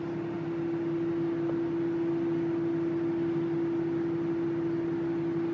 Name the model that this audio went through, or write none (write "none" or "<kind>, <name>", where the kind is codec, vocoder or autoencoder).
none